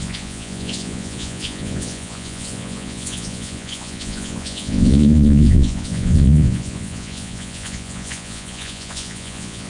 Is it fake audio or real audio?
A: fake